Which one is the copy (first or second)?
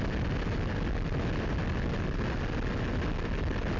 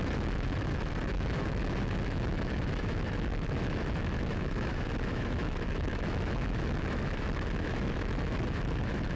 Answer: second